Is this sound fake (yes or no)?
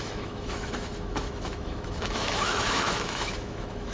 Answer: yes